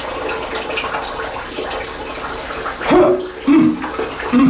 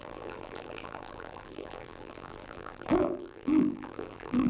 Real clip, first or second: first